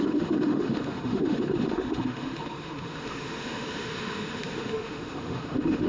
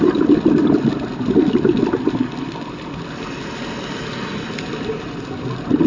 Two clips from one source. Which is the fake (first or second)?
first